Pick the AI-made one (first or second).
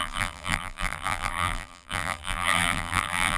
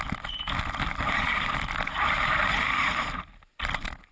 first